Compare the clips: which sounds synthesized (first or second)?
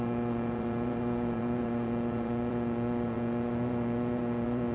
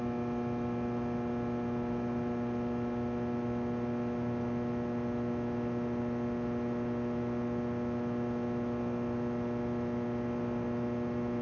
first